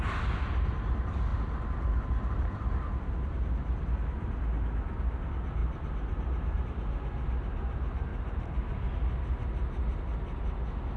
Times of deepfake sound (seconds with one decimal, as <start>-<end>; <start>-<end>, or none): 5.6-6.6; 8.1-8.9